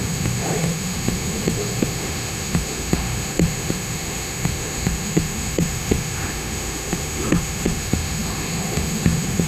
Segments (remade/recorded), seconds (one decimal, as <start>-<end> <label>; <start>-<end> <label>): 0.0-9.5 remade